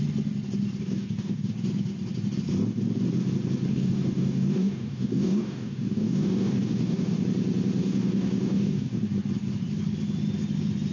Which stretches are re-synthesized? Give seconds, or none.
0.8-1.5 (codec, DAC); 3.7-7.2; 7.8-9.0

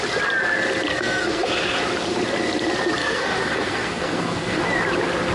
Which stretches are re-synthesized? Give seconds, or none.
0.9-1.5 (codec, SNAC); 3.0-4.6

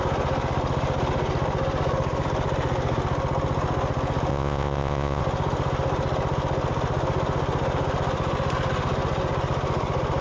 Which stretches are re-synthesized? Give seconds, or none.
4.3-5.2 (vocoder, Vocos)

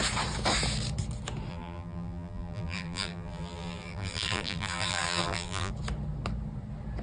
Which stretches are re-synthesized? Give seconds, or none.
1.5-5.7 (vocoder, BigVGAN v2)